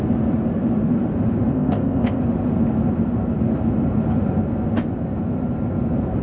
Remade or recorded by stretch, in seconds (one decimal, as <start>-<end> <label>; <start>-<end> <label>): 0.0-1.5 recorded; 1.5-2.2 remade; 2.2-6.2 recorded